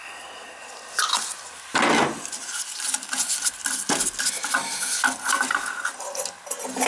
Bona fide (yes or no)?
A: yes